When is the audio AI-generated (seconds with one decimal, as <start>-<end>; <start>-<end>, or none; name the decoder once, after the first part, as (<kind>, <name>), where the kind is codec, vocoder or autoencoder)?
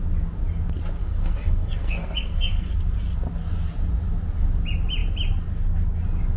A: 1.0-2.7 (codec, SNAC)